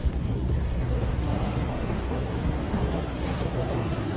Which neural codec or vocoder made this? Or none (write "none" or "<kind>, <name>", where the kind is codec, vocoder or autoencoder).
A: codec, SNAC